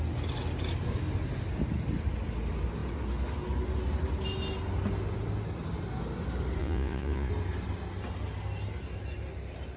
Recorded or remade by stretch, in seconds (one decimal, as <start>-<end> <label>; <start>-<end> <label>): 0.0-6.6 recorded; 6.6-7.3 remade; 7.3-9.8 recorded